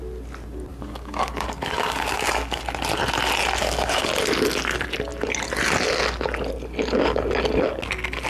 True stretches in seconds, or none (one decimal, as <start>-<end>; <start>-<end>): 0.0-0.7; 2.6-3.6; 4.1-8.3